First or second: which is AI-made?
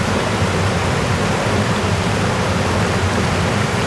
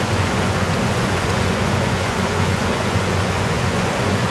second